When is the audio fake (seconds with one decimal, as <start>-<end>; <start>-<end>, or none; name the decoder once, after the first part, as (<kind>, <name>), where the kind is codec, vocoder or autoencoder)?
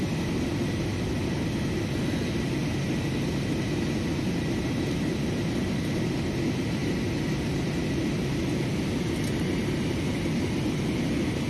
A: 0.0-2.6 (vocoder, BigVGAN v2); 5.1-11.5